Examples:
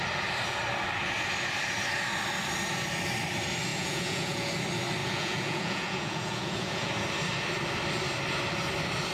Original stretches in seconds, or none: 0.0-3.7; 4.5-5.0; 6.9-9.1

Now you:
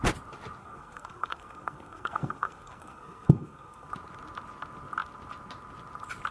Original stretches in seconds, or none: 0.0-0.6; 3.9-6.3

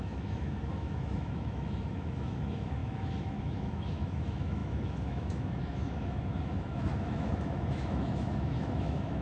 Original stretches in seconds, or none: none

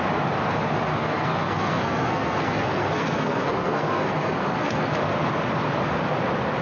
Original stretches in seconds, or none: 0.0-0.9; 4.9-6.6